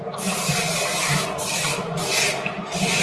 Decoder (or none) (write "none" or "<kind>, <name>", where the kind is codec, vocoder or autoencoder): none